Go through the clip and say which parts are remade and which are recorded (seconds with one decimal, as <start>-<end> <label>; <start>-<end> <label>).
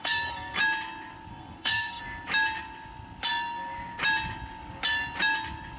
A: 0.0-0.6 remade; 0.6-1.3 recorded; 1.3-2.0 remade; 2.0-5.8 recorded